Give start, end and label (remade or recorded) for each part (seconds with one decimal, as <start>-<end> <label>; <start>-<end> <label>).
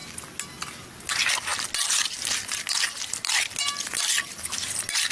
0.0-5.1 recorded